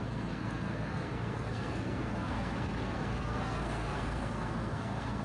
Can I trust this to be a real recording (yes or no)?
no